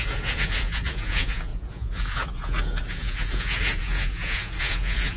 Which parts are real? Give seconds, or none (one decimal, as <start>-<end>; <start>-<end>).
none